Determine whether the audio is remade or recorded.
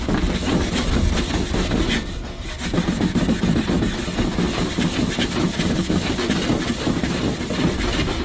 recorded